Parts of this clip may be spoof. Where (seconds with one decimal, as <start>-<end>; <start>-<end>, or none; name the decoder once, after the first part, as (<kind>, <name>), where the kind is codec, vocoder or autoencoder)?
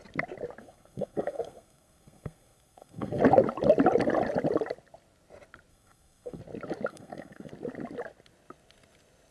0.6-3.2 (codec, SNAC); 5.7-6.4; 6.9-7.5